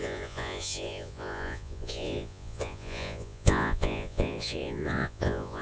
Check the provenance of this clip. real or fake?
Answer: fake